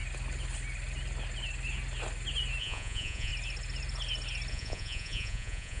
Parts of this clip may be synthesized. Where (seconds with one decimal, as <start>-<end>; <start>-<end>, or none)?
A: 2.6-3.3; 4.5-5.8